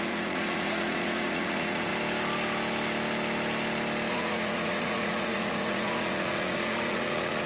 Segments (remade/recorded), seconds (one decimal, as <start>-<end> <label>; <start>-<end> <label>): 0.0-1.9 remade; 1.9-4.1 recorded; 4.1-7.5 remade